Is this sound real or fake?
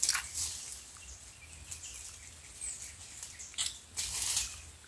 real